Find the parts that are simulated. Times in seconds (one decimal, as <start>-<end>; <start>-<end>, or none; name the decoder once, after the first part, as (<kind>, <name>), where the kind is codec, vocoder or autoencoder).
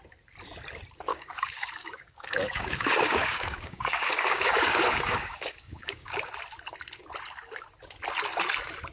1.1-6.3 (codec, DAC)